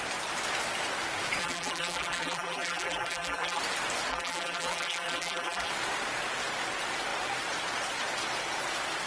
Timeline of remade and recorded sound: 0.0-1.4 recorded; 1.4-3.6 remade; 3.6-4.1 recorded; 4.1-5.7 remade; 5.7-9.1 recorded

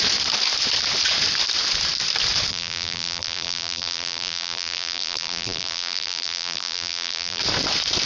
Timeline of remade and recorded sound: 0.0-2.5 recorded; 2.5-7.4 remade; 7.4-8.1 recorded

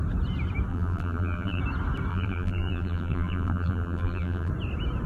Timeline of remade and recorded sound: 0.0-0.7 recorded; 0.7-1.6 remade; 1.6-2.1 recorded; 2.1-4.5 remade; 4.5-5.1 recorded

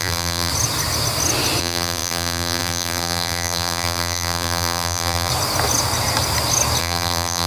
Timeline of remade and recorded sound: 0.0-0.5 remade; 0.5-1.6 recorded; 1.6-5.3 remade; 5.3-6.8 recorded; 6.8-7.5 remade

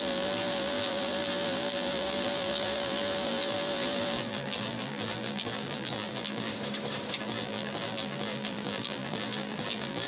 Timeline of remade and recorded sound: 0.0-6.5 remade; 6.5-7.2 recorded; 7.2-10.1 remade

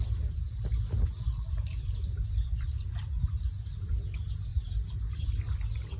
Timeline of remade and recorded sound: 0.0-1.3 recorded; 1.3-3.9 remade; 3.9-6.0 recorded

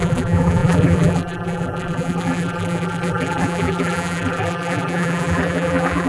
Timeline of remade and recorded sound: 0.0-6.1 remade

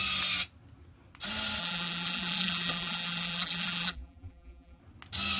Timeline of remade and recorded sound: 0.0-1.6 recorded; 1.6-4.8 remade; 4.8-5.4 recorded